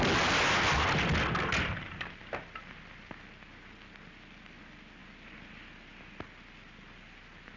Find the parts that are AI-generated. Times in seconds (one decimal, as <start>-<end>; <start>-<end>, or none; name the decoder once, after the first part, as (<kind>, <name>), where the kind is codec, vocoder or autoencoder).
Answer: 1.5-3.1 (vocoder, BigVGAN v2)